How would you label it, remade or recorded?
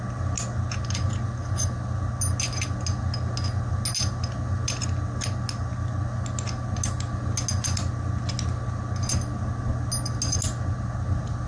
recorded